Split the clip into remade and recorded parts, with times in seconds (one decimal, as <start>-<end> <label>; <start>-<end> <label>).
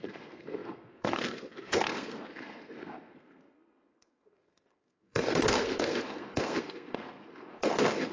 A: 0.0-8.1 remade